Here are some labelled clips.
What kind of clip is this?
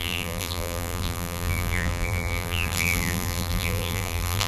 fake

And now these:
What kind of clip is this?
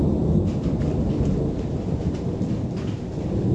real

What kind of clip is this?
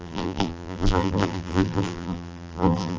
fake